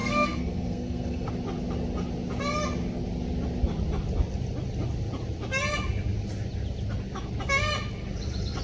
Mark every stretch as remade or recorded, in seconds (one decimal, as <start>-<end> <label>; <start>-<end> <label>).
0.0-1.3 remade; 1.3-8.6 recorded